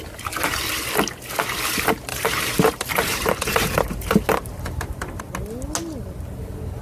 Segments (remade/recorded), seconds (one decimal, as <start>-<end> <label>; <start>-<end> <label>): 0.0-2.1 recorded; 2.1-5.2 remade; 5.2-6.8 recorded